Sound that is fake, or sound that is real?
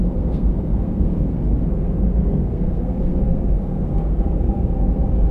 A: fake